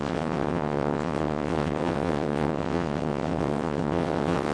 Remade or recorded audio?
remade